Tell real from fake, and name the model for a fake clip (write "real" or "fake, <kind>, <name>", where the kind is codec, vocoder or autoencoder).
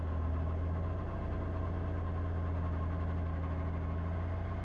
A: real